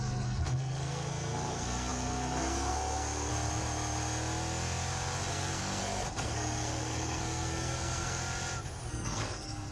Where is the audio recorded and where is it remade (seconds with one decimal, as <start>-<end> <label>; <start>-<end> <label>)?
0.0-3.3 remade; 3.3-5.3 recorded; 5.3-8.2 remade; 8.2-8.9 recorded; 8.9-9.7 remade